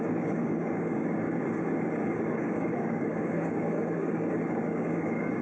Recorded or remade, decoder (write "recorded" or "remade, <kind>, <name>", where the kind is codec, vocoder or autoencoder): remade, codec, DAC